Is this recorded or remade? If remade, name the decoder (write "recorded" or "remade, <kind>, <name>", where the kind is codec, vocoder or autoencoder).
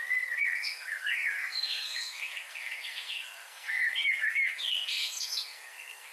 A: remade, codec, SNAC